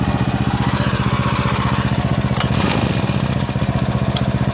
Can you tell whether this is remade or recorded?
recorded